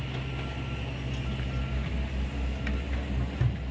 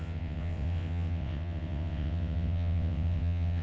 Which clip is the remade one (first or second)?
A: second